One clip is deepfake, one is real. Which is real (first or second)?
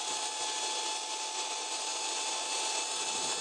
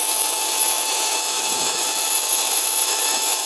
first